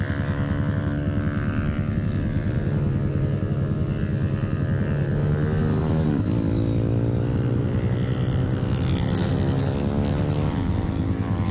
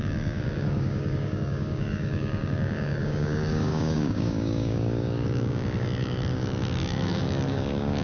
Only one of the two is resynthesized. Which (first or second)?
second